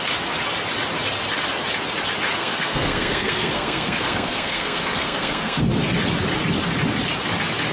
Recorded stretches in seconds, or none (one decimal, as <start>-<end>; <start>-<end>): 0.0-2.4; 5.6-7.7